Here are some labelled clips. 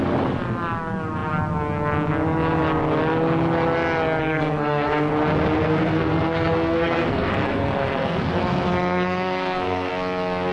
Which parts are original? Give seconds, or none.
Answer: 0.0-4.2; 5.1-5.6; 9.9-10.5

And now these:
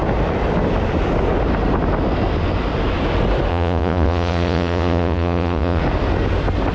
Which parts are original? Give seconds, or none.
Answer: 0.0-3.5; 5.8-6.7

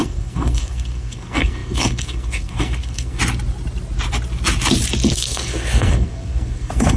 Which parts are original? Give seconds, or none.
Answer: 3.2-5.1

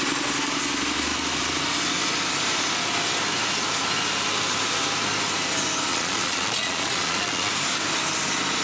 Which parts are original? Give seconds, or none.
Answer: 0.0-5.9; 7.5-8.6

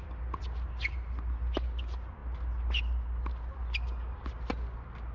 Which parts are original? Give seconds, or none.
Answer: 0.0-5.1

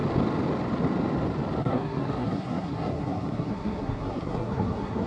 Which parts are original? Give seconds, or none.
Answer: 0.0-1.6

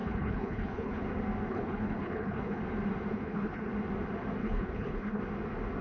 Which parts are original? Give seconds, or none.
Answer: 1.1-1.5; 2.6-3.1; 3.7-4.4; 5.2-5.8

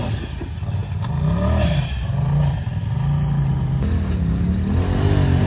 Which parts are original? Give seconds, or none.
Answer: 0.0-5.5